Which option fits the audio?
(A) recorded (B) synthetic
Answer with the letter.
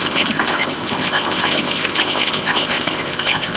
B